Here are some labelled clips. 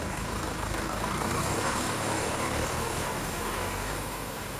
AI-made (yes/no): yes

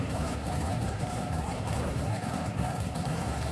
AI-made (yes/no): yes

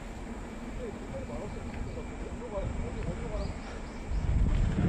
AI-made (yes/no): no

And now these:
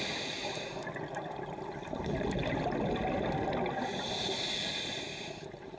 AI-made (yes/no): no